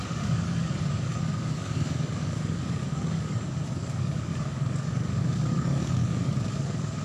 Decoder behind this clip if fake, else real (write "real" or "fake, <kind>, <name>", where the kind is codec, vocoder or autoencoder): fake, codec, DAC